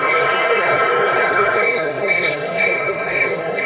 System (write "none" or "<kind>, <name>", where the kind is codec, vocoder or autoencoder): codec, SNAC